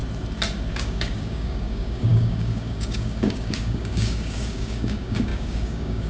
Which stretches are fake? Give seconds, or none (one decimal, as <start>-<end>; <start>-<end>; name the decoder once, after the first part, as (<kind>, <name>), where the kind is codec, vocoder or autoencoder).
0.7-6.1 (codec, DAC)